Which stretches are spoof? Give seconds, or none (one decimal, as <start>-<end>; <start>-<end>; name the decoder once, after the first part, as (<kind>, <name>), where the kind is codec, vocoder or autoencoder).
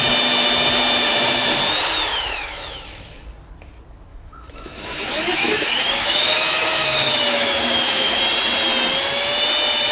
2.1-3.2 (autoencoder, DAC-VAE); 4.1-8.2